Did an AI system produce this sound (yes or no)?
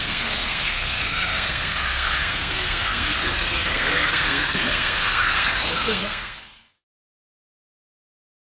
yes